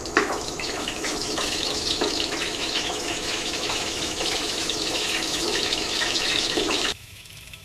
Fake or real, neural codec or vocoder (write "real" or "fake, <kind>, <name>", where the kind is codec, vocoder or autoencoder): fake, autoencoder, DAC-VAE